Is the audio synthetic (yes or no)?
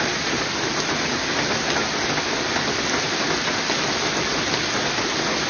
no